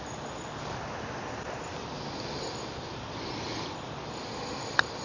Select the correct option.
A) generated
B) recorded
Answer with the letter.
B